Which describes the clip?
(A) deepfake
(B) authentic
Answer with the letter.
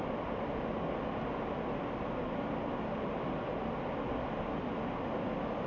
B